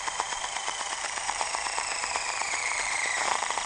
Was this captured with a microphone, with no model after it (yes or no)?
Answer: no